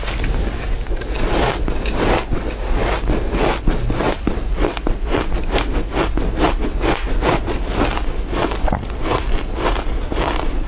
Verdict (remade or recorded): recorded